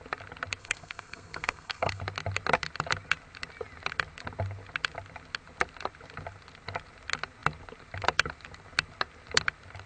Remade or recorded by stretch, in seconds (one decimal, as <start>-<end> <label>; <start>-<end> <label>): 0.0-0.6 recorded; 0.6-2.0 remade; 2.0-9.9 recorded